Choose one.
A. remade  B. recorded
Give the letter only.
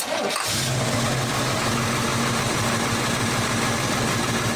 B